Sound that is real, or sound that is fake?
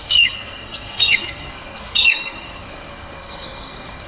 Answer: fake